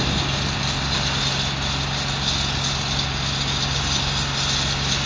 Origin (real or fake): real